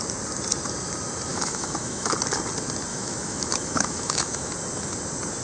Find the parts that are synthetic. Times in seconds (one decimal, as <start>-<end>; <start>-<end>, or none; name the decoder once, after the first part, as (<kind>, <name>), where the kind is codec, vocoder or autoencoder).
1.3-2.1 (autoencoder, DAC-VAE); 2.9-4.5